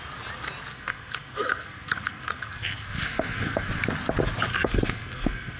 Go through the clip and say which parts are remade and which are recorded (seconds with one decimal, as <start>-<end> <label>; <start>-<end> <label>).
0.0-0.7 recorded; 0.7-3.7 remade; 3.7-4.5 recorded; 4.5-5.6 remade